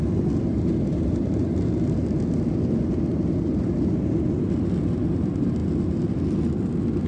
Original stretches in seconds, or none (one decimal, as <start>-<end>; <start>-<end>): 0.0-7.1